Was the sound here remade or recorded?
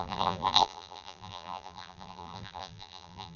remade